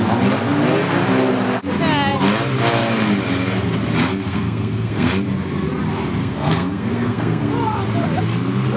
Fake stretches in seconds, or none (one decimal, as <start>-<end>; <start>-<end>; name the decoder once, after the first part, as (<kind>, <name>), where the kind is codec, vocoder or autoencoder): 4.0-5.1 (codec, SNAC); 6.2-7.5